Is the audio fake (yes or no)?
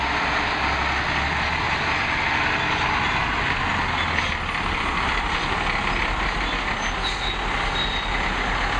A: no